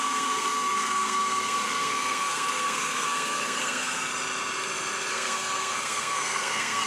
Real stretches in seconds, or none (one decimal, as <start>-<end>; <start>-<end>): 4.1-5.1